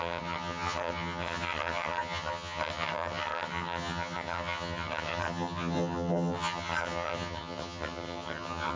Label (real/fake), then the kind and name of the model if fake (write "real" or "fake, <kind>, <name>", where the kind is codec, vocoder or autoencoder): fake, vocoder, HiFi-GAN